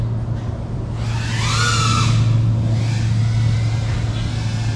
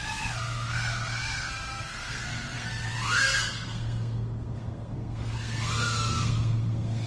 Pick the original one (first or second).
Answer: first